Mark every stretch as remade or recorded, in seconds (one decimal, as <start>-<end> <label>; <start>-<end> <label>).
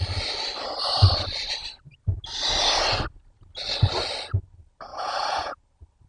0.0-4.9 recorded; 4.9-5.6 remade; 5.6-6.1 recorded